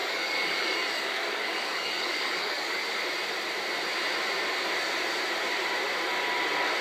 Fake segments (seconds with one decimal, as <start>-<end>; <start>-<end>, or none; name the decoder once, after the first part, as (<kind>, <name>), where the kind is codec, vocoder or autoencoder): 0.0-2.8 (codec, DAC)